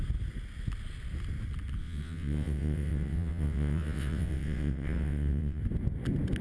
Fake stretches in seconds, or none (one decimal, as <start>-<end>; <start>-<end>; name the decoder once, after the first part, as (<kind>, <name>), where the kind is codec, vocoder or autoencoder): 1.8-5.6 (vocoder, WaveNeXt)